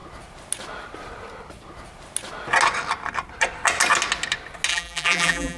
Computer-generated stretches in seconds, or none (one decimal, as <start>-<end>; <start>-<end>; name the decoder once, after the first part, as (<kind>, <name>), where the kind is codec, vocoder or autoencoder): 4.7-5.6 (vocoder, BigVGAN v2)